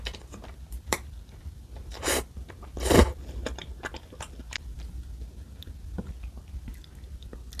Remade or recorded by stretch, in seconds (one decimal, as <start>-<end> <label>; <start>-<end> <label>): 0.0-0.4 recorded; 0.4-5.0 remade; 5.0-7.6 recorded